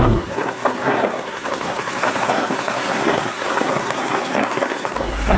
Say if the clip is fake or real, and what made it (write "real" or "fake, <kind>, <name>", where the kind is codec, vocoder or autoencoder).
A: fake, codec, SNAC